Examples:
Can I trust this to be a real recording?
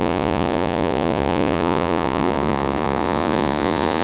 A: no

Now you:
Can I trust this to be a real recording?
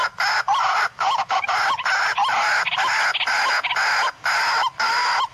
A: yes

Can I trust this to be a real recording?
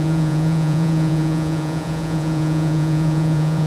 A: no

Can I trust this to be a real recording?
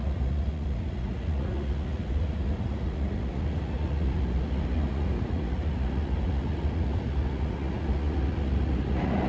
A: no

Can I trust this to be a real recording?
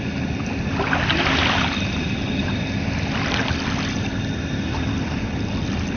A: yes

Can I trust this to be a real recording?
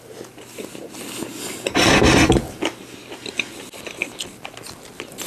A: yes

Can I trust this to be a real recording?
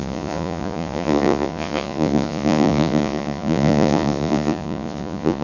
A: no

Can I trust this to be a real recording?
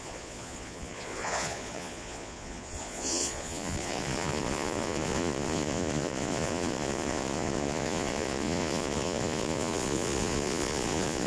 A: no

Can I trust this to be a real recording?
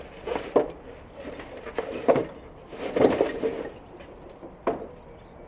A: yes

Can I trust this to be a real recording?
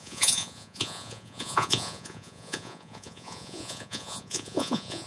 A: no